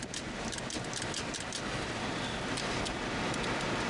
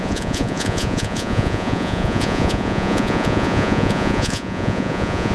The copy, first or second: second